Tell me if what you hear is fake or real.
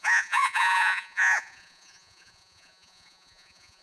fake